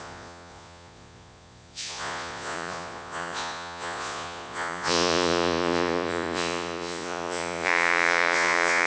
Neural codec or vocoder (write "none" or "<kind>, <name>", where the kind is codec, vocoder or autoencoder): vocoder, Vocos